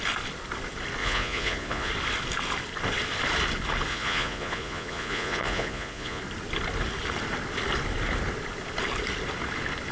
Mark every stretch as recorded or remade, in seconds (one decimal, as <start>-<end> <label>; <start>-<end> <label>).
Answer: 0.0-1.0 recorded; 1.0-1.9 remade; 1.9-3.9 recorded; 3.9-6.2 remade; 6.2-9.9 recorded